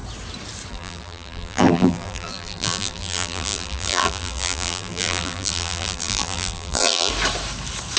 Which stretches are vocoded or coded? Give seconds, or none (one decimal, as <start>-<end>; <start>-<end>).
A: 0.7-7.1

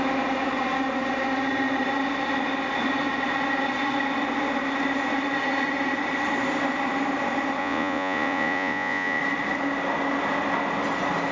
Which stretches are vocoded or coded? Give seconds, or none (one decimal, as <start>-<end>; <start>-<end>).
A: 7.6-9.2

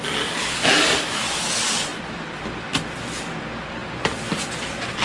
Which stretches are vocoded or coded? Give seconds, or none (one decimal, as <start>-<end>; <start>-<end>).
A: 1.9-3.2

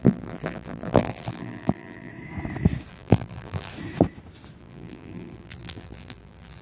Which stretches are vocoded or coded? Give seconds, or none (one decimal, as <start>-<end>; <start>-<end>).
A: 0.0-2.1; 2.9-3.7; 4.6-6.6